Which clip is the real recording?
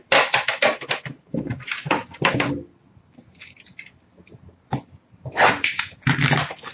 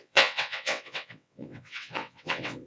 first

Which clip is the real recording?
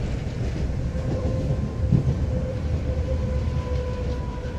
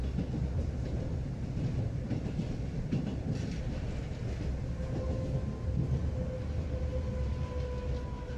second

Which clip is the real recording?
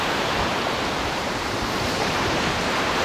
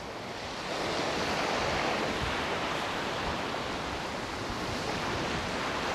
second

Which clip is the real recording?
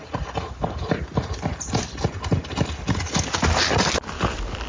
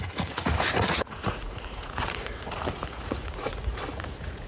first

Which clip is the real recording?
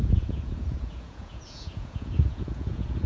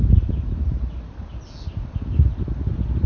second